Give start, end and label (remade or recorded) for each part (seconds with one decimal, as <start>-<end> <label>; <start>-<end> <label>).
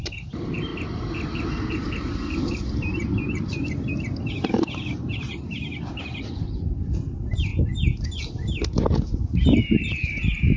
0.0-7.5 remade; 7.5-8.2 recorded; 8.2-10.6 remade